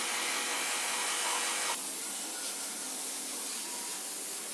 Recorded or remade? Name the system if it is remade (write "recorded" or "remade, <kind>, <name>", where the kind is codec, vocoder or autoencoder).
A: recorded